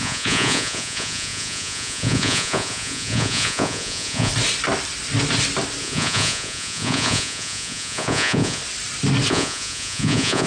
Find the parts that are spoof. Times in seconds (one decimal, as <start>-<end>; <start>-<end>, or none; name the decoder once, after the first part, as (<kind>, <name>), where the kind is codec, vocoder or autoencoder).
0.0-4.3 (vocoder, Vocos); 5.8-8.6; 9.3-10.5